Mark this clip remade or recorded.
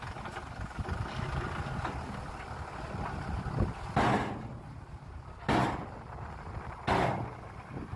recorded